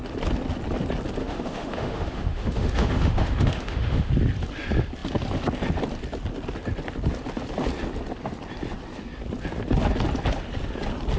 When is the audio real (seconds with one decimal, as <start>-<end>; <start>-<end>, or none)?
0.0-1.2; 4.1-11.2